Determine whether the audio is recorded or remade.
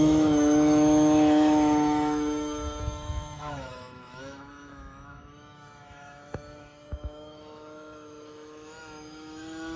remade